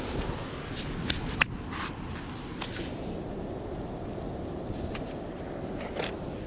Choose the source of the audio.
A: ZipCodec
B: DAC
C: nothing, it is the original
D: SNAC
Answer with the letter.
C